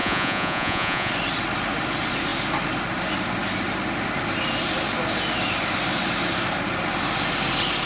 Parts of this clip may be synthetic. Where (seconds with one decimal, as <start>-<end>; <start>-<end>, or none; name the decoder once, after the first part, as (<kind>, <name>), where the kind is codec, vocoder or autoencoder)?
0.0-1.1 (vocoder, Vocos)